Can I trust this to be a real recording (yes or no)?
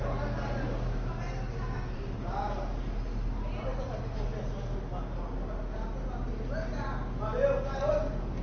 yes